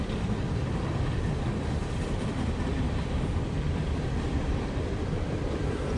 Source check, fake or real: fake